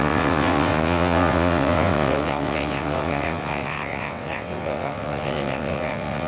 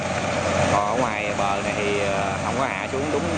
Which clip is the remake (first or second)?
first